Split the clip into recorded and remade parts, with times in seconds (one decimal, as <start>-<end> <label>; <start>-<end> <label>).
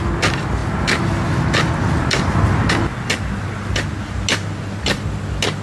0.0-5.6 recorded